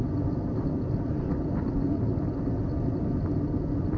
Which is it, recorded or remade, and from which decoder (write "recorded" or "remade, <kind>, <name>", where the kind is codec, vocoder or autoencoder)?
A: recorded